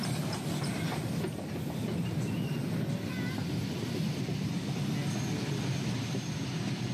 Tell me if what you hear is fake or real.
real